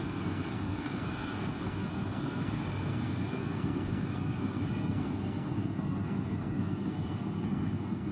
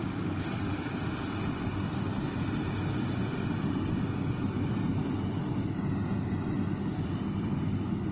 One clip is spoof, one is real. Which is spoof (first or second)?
first